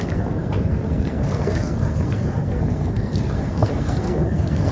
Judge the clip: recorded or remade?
remade